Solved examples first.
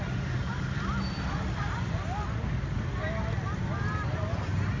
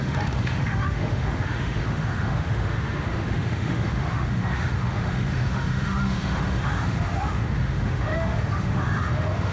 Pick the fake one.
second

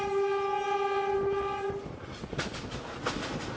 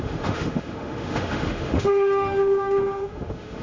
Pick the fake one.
second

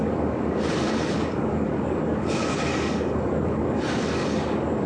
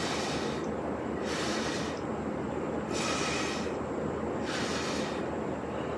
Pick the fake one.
first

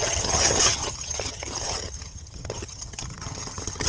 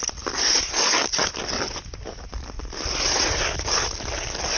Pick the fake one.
first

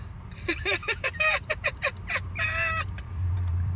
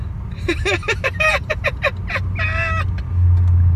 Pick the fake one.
first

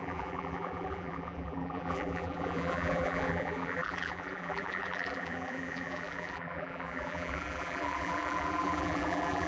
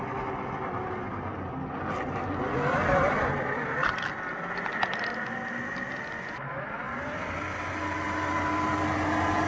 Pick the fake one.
first